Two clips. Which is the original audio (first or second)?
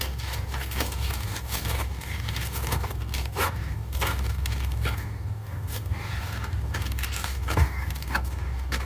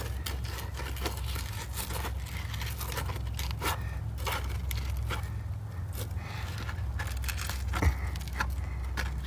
second